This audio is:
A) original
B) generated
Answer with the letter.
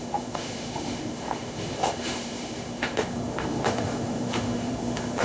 B